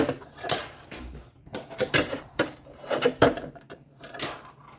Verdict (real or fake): fake